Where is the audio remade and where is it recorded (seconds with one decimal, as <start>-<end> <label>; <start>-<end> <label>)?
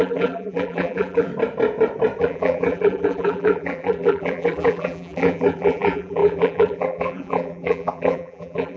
0.0-1.3 remade; 1.3-2.2 recorded; 2.2-8.8 remade